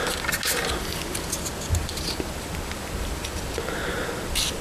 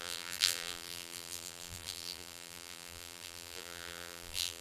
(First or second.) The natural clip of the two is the first